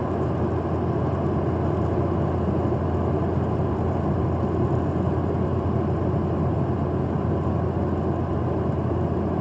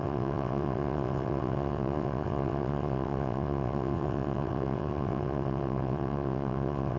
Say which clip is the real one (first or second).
first